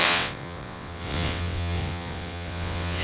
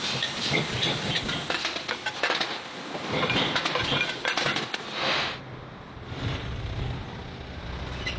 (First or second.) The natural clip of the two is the second